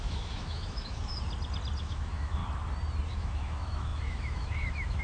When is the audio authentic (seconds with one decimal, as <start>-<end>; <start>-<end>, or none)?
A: 1.1-1.8; 2.4-3.1